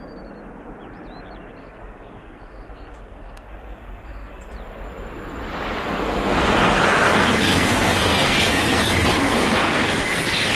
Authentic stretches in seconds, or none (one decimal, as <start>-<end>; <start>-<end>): 0.0-1.6; 4.5-5.8